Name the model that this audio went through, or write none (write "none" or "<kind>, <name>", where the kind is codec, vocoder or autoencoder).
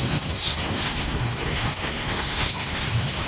codec, SNAC